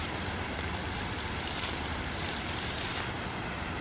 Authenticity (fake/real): fake